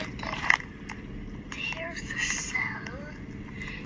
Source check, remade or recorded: recorded